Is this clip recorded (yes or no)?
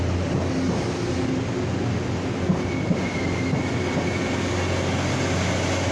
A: yes